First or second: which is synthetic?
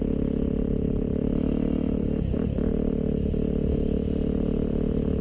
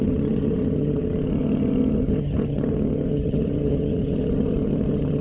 second